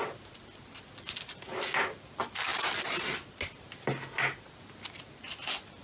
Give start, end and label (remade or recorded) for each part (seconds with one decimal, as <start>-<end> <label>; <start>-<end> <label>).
0.0-5.8 recorded